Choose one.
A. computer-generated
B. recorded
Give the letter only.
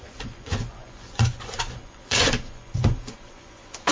A